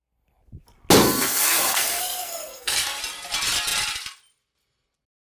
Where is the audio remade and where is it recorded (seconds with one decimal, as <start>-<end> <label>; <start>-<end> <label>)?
0.0-1.2 recorded; 1.2-3.0 remade; 3.0-5.2 recorded